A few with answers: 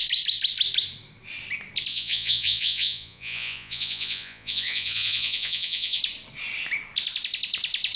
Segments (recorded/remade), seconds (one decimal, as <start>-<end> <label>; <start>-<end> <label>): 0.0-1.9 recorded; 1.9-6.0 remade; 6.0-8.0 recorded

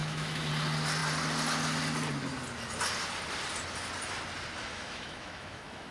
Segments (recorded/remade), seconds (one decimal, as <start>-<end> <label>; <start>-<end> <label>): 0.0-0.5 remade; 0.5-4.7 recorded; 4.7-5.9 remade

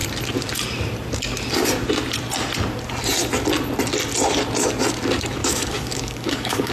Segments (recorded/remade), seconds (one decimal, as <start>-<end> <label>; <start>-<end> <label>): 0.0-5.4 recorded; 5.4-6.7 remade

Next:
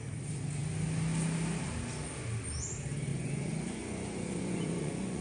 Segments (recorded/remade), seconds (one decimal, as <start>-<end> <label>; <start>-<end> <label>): 0.0-3.1 recorded; 3.1-5.2 remade